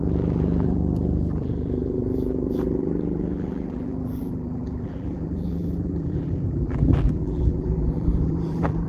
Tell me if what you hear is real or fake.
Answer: fake